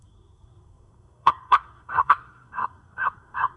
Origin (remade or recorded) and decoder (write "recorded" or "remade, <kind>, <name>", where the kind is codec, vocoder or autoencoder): remade, codec, SNAC